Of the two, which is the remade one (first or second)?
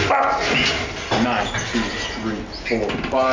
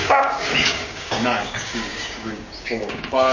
second